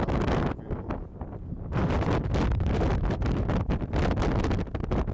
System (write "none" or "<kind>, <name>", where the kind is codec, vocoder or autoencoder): none